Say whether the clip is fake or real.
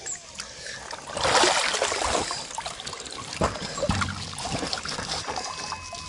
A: real